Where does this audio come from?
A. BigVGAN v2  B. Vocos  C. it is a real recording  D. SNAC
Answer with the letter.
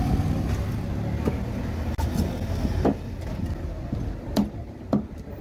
C